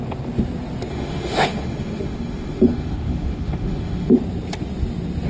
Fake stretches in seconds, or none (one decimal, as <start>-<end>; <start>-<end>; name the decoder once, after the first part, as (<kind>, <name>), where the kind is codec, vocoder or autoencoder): 0.9-4.1 (autoencoder, DAC-VAE)